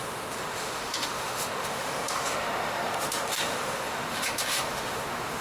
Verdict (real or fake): fake